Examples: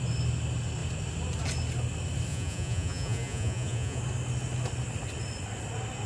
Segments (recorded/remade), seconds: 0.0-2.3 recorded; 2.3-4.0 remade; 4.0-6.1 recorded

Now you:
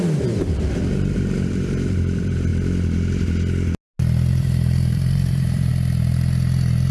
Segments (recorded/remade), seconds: 0.0-2.5 remade; 2.5-4.3 recorded; 4.3-5.7 remade; 5.7-6.9 recorded

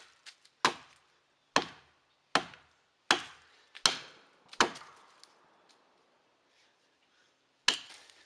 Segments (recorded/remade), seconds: 0.0-8.3 recorded